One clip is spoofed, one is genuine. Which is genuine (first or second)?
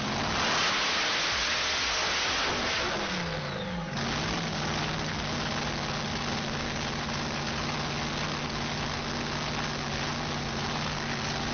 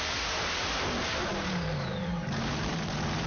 first